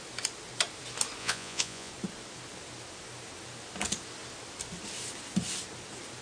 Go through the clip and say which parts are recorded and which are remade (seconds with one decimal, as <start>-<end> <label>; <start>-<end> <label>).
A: 0.0-1.2 recorded; 1.2-1.9 remade; 1.9-6.2 recorded